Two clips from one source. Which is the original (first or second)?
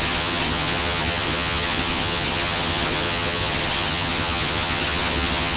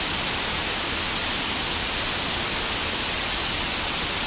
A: second